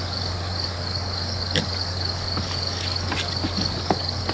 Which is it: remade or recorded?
remade